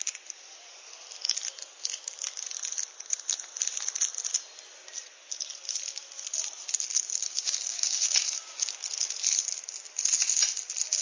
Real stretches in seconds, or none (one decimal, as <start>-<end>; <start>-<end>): 0.0-7.2; 8.7-11.0